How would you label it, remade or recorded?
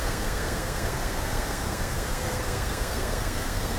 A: remade